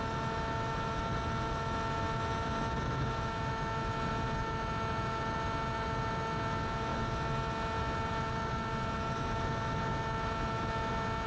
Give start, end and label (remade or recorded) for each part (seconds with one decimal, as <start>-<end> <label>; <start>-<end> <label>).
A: 0.0-11.3 recorded